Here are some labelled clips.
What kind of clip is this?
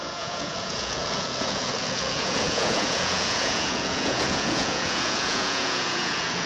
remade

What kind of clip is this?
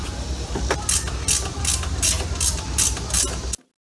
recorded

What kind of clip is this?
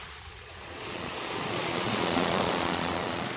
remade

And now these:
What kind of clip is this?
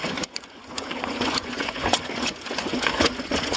remade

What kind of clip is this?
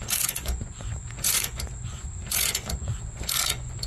remade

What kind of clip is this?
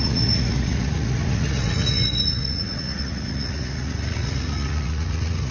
remade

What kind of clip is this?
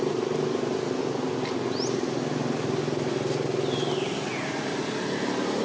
recorded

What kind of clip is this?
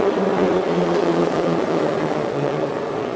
remade